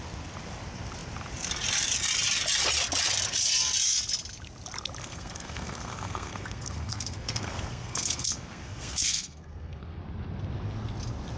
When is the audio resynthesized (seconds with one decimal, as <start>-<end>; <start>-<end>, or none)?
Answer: 5.0-10.0